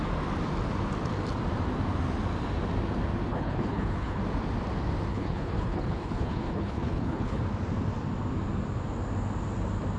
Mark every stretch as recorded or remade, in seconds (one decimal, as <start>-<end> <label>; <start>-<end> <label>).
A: 0.0-3.3 recorded; 3.3-4.2 remade; 4.2-5.1 recorded; 5.1-7.4 remade; 7.4-10.0 recorded